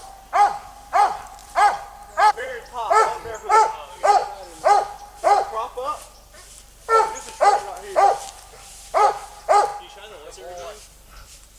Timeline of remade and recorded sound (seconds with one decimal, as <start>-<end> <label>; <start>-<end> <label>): 0.0-0.9 recorded; 0.9-4.2 remade; 4.2-8.6 recorded; 8.6-9.7 remade; 9.7-10.3 recorded; 10.3-11.6 remade